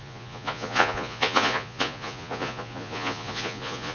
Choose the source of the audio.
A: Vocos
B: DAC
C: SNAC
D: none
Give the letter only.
A